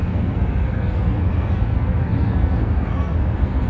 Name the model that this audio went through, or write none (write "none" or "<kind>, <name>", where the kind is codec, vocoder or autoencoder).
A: codec, SNAC